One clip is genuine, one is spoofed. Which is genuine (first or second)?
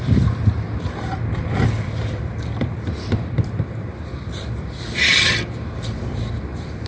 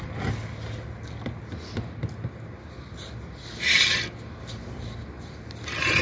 second